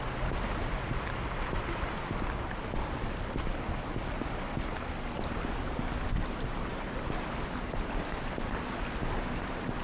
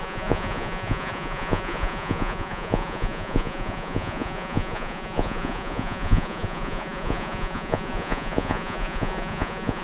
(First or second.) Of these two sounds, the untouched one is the first